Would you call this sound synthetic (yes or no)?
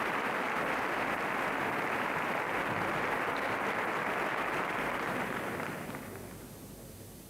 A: no